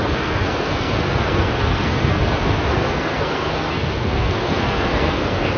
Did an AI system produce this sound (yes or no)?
yes